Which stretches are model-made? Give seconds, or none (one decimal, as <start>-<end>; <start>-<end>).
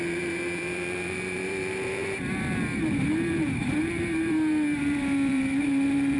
0.0-6.2